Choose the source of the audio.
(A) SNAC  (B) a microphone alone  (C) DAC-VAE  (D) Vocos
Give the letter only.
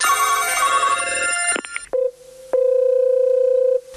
B